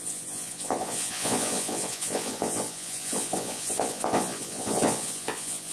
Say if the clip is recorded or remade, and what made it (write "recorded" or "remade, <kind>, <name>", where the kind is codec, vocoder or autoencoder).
remade, vocoder, Vocos